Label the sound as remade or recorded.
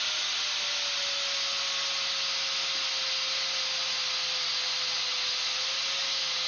recorded